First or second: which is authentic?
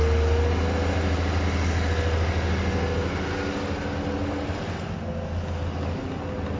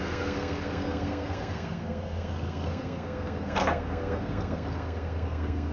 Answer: first